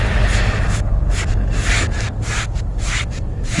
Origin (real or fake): real